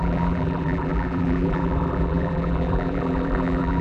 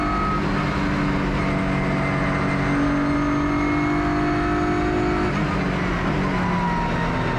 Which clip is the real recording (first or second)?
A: second